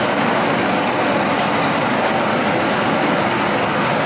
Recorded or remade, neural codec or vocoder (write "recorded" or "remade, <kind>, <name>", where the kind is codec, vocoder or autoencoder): recorded